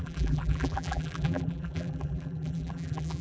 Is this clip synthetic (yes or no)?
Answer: yes